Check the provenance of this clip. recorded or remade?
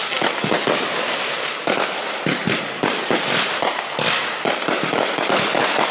recorded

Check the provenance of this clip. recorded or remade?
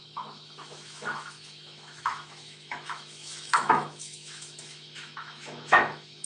remade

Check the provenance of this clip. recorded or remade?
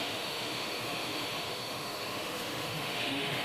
remade